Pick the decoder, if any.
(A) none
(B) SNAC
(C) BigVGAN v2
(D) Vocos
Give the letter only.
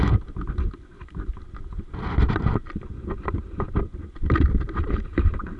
A